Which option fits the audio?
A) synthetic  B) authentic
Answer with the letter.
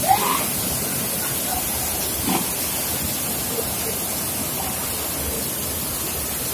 B